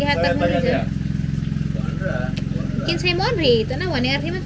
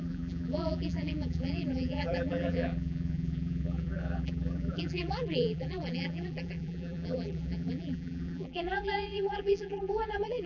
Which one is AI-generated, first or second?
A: second